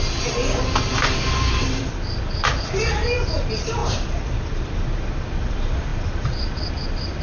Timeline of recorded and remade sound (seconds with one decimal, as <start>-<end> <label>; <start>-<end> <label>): 0.0-7.2 recorded